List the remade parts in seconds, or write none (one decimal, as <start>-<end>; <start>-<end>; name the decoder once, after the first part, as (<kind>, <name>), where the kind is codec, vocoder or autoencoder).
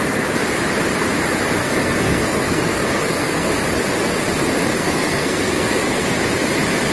1.6-3.5 (codec, SNAC); 4.7-6.2